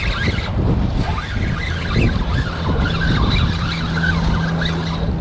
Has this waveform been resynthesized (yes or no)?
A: no